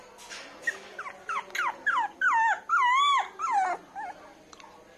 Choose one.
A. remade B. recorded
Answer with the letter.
B